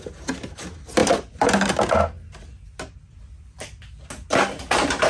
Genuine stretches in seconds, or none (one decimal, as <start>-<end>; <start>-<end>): 0.0-5.1